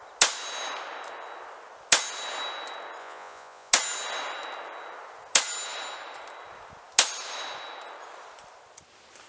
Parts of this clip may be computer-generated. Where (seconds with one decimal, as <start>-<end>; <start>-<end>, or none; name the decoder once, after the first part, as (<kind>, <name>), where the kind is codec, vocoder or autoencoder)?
3.0-3.7 (vocoder, Vocos)